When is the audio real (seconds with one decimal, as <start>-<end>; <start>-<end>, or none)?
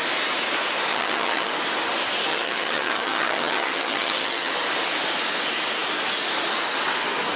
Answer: 0.0-0.9; 1.5-2.3; 4.5-7.4